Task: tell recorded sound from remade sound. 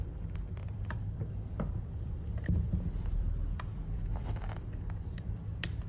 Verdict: remade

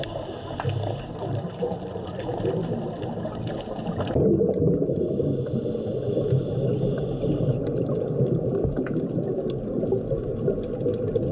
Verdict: recorded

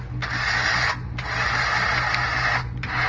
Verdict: recorded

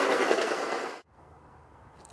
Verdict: remade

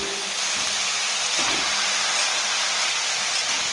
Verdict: recorded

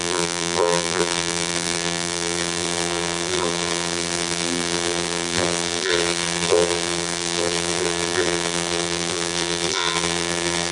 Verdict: remade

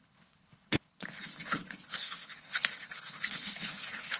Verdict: remade